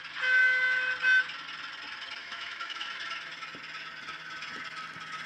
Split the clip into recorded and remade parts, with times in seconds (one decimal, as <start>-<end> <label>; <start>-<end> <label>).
0.0-2.2 recorded; 2.2-2.9 remade; 2.9-5.3 recorded